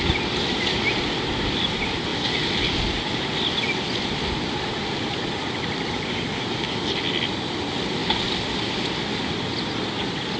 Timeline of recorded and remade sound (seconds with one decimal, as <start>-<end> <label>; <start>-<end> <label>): 0.0-10.4 recorded